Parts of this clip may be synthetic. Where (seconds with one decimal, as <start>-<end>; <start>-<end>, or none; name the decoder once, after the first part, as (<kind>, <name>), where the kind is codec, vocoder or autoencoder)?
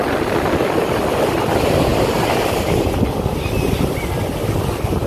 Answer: none